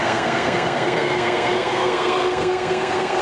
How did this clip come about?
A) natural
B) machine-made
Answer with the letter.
B